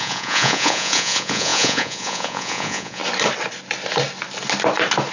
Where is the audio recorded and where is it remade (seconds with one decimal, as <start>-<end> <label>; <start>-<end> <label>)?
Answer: 0.0-3.0 remade; 3.0-5.1 recorded